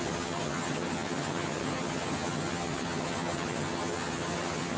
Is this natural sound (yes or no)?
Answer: no